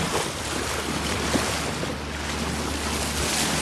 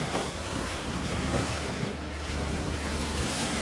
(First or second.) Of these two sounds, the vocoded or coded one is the second